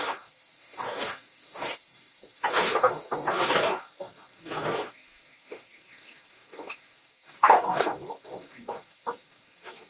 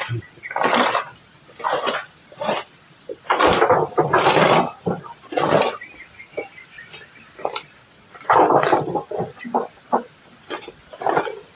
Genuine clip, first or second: second